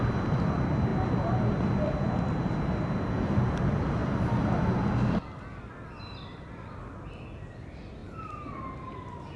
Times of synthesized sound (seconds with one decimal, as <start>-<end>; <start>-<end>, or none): none